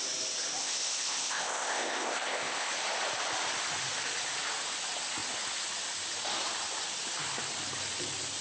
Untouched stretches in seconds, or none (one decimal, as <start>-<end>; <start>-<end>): 0.0-0.6; 2.7-8.4